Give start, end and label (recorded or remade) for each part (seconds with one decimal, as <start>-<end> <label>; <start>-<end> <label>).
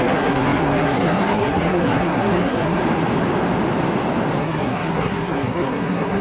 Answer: 0.0-2.8 remade; 2.8-4.4 recorded; 4.4-6.2 remade